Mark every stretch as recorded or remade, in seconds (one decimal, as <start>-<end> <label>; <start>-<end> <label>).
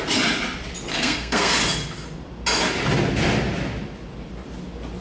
0.0-0.9 recorded; 0.9-1.5 remade; 1.5-5.0 recorded